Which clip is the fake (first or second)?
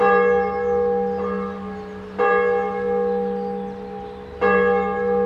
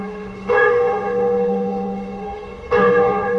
second